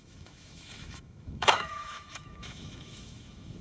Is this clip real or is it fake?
fake